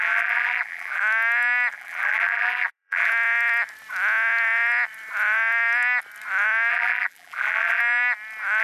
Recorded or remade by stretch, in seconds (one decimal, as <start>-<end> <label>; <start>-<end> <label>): 0.0-1.0 remade; 1.0-1.7 recorded; 1.7-3.1 remade; 3.1-6.7 recorded; 6.7-7.8 remade; 7.8-8.6 recorded